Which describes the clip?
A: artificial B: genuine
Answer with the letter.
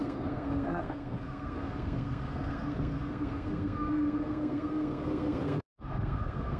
A